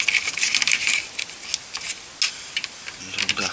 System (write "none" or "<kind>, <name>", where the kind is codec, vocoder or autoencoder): none